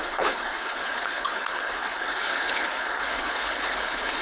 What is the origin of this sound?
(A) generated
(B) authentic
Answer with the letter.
A